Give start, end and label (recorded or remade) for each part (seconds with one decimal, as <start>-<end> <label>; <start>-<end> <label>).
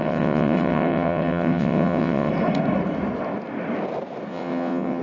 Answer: 0.0-2.3 remade; 2.3-4.3 recorded; 4.3-5.0 remade